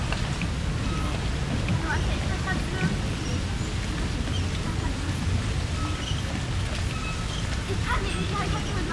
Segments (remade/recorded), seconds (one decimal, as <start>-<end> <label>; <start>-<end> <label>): 0.0-8.9 recorded